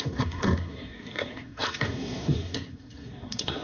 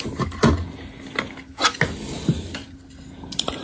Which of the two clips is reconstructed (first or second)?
first